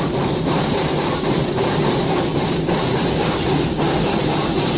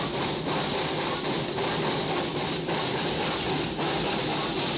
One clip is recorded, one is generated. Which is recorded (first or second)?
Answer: second